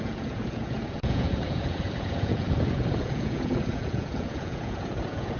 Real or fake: fake